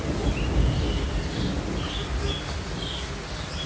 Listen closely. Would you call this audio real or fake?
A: real